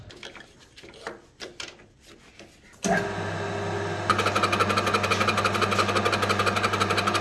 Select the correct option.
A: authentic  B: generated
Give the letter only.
A